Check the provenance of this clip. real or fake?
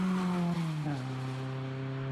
real